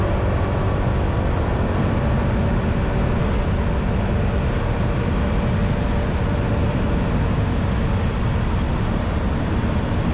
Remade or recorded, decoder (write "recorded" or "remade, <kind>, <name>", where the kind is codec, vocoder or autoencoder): recorded